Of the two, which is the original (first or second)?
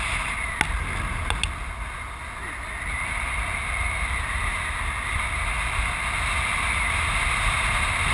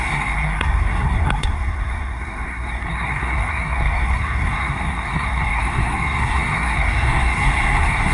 first